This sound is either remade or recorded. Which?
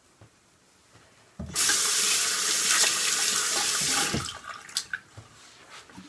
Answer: recorded